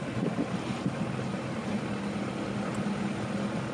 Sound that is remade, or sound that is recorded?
recorded